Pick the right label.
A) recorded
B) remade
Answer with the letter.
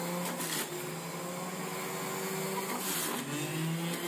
A